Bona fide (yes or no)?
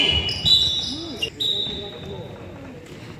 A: yes